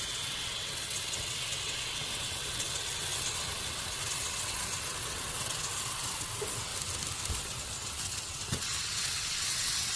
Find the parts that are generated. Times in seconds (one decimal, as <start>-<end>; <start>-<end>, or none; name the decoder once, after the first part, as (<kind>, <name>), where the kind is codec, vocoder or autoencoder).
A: 0.0-6.7 (vocoder, WaveNeXt); 7.3-10.0